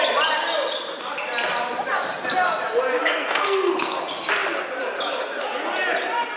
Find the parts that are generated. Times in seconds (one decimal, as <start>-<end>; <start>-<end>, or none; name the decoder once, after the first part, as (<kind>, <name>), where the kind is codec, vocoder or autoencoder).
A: 3.0-4.0 (codec, SNAC)

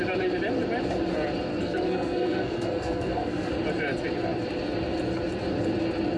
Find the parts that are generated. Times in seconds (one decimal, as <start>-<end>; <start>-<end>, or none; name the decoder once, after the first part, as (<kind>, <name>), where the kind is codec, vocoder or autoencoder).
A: 1.5-3.5 (codec, SNAC)

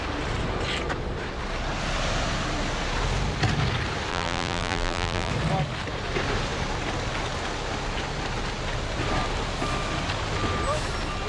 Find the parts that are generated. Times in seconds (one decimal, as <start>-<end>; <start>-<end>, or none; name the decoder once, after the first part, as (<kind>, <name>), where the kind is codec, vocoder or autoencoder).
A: 4.1-5.3 (vocoder, BigVGAN v2)

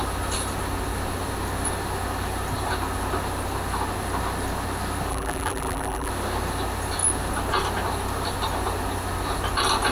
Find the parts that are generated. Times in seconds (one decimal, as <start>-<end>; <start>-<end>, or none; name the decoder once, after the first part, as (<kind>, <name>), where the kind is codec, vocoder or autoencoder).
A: 5.1-6.1 (vocoder, BigVGAN v2)

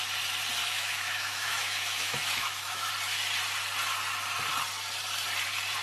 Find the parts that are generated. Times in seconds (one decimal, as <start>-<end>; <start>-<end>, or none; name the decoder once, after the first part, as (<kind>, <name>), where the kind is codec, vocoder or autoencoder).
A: 0.6-2.9 (autoencoder, DAC-VAE)

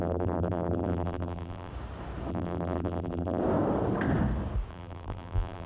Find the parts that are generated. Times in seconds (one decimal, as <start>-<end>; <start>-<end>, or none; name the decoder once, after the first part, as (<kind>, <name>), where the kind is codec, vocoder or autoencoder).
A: 0.0-1.7 (vocoder, BigVGAN v2); 2.3-3.4; 4.7-5.7